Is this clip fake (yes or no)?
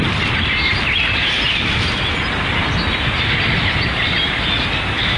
no